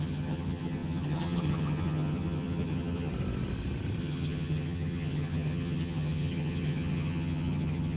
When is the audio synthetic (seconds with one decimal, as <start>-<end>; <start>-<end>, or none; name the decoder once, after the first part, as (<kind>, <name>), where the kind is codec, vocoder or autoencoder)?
0.0-3.1 (vocoder, HiFi-GAN); 4.0-8.0